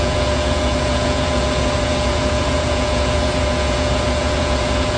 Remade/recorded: remade